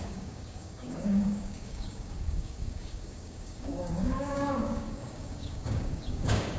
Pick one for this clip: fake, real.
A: fake